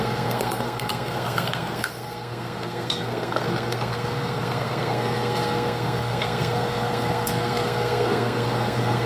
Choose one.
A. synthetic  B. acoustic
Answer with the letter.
A